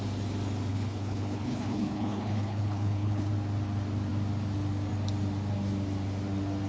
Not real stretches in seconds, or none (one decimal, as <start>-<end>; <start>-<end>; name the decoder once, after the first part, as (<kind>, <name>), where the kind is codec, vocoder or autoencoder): 0.7-3.3 (codec, HILCodec)